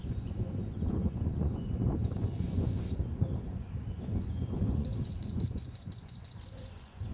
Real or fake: fake